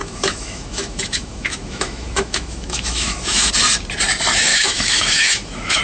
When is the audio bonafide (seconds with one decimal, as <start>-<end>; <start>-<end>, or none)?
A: 3.5-4.5